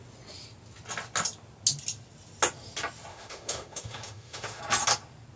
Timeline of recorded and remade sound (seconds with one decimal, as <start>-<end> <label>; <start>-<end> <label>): 0.0-3.1 recorded; 3.1-4.6 remade; 4.6-5.4 recorded

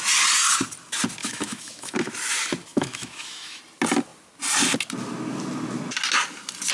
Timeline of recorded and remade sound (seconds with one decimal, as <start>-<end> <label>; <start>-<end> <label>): 0.0-1.2 recorded; 1.2-2.1 remade; 2.1-2.7 recorded; 2.7-3.6 remade; 3.6-6.7 recorded